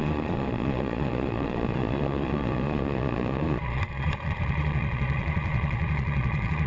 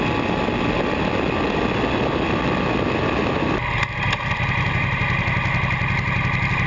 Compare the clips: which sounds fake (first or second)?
first